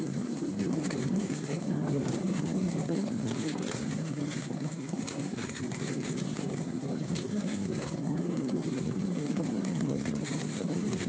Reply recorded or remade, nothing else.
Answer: remade